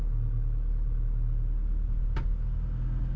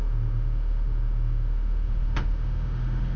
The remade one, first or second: second